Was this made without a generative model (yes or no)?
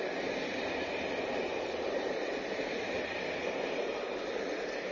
yes